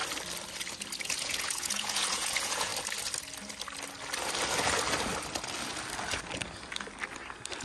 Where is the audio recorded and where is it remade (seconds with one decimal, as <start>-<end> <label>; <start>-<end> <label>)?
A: 0.0-1.0 recorded; 1.0-2.7 remade; 2.7-7.6 recorded